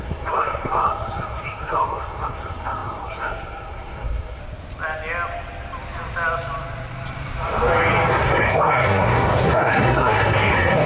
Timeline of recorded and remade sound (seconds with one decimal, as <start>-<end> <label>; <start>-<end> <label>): 0.0-4.4 remade; 4.4-8.1 recorded; 8.1-10.9 remade

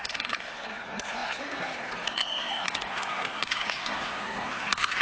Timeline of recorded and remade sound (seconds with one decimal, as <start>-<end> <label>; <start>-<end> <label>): 0.0-5.0 remade

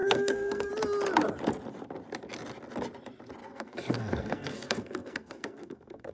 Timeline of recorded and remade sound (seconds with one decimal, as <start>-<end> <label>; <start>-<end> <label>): 0.0-0.7 remade; 0.7-3.4 recorded; 3.4-6.1 remade